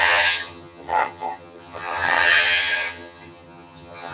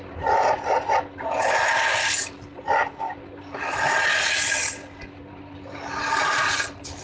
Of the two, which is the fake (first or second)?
first